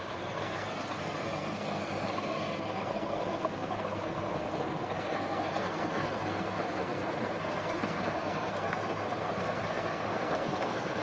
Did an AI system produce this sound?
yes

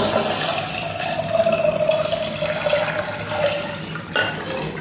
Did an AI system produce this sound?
no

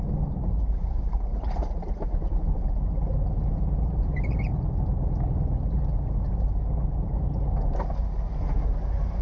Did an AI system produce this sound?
no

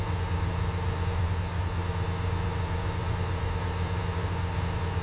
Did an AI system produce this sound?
no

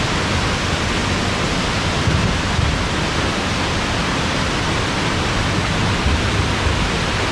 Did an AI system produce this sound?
no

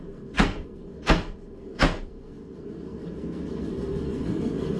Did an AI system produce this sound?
yes